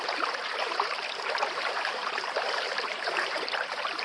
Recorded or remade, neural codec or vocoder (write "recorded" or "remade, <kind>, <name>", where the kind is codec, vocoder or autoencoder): remade, vocoder, BigVGAN v2